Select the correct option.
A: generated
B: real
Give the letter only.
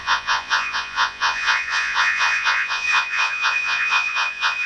A